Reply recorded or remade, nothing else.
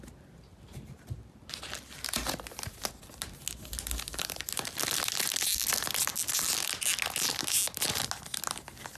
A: recorded